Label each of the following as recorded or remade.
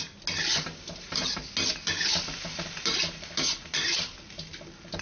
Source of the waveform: recorded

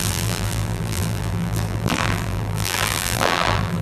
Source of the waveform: remade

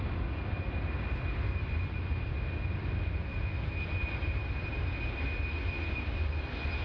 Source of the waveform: recorded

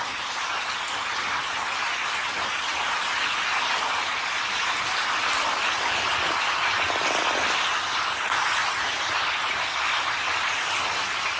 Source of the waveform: recorded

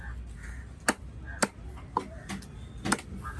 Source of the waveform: recorded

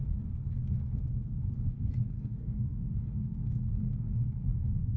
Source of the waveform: remade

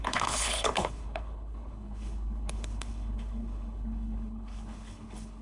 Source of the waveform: remade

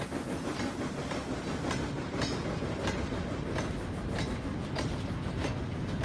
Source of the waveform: recorded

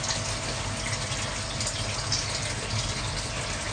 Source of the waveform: recorded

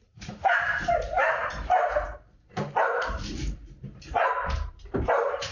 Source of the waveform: remade